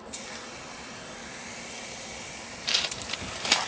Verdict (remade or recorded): recorded